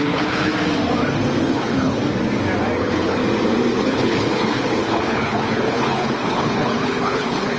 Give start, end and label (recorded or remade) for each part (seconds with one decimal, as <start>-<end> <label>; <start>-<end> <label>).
0.0-0.5 remade; 0.5-1.4 recorded; 1.4-2.0 remade; 2.0-2.8 recorded; 2.8-3.2 remade; 3.2-3.7 recorded; 3.7-7.6 remade